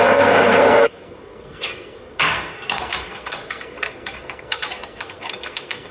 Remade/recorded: remade